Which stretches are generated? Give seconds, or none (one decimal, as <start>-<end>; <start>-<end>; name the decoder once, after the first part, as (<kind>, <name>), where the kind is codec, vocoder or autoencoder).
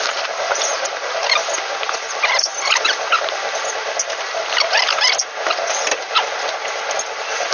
none